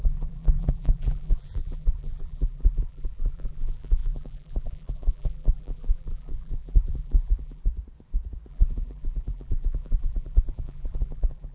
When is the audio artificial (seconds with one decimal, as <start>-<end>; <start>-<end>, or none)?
0.0-7.6; 8.5-11.5